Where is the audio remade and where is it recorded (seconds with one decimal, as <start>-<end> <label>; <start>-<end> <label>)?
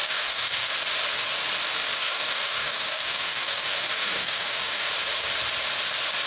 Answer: 0.0-0.7 remade; 0.7-2.0 recorded; 2.0-4.9 remade; 4.9-6.3 recorded